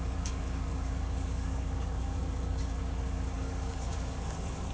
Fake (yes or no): yes